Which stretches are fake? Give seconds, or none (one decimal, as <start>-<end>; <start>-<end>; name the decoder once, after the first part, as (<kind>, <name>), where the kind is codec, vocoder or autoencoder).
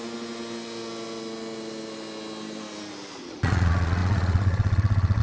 3.1-5.2 (vocoder, Vocos)